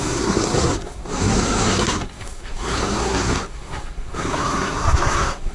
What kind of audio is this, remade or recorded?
remade